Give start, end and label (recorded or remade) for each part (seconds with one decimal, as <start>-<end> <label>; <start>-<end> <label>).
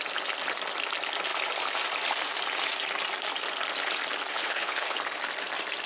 0.0-4.3 recorded; 4.3-5.0 remade; 5.0-5.9 recorded